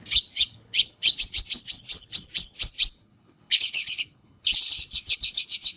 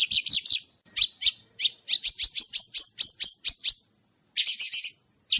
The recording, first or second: second